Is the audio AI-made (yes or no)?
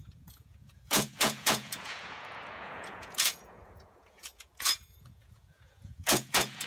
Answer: yes